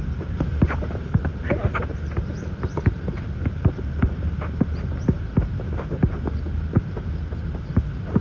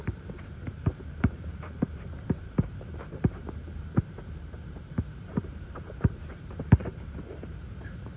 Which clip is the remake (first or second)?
second